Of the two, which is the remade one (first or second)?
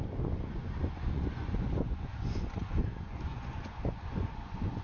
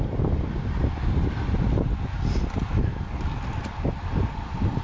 first